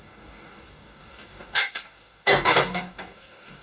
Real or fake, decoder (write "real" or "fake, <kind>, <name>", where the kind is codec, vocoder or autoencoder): fake, codec, DAC